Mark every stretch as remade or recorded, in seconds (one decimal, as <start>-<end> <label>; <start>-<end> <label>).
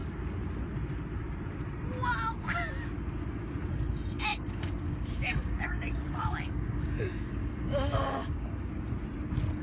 0.0-4.3 recorded; 4.3-8.5 remade; 8.5-9.6 recorded